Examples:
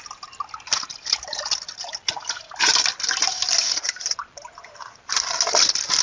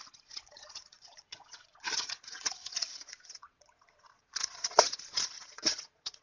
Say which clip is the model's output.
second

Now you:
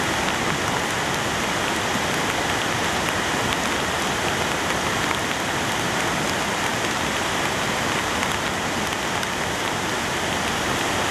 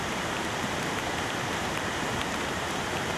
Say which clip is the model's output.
second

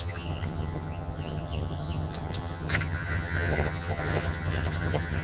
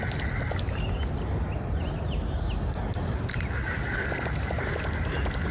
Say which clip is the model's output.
first